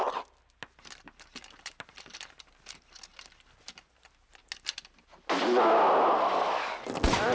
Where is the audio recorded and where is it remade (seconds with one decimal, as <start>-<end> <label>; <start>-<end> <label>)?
0.0-7.3 recorded